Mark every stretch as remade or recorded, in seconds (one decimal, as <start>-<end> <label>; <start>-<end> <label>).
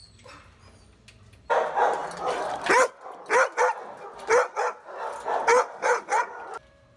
0.0-5.5 recorded; 5.5-7.0 remade